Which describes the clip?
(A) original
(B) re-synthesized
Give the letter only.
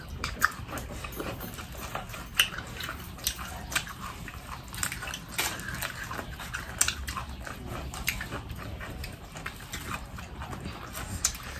A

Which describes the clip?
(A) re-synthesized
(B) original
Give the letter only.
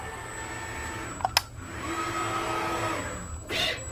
B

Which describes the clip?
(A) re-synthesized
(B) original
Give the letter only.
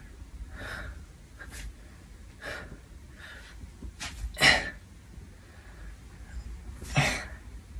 B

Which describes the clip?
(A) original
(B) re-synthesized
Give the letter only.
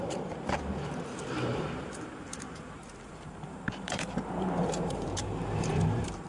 B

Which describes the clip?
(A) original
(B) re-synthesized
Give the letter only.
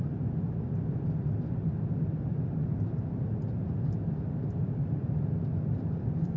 A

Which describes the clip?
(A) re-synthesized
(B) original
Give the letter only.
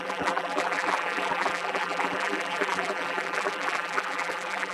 A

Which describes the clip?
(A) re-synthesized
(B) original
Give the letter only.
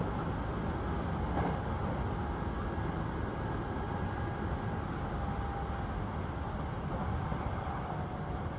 B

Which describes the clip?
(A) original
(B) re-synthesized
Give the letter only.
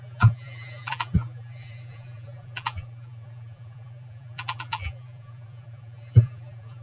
B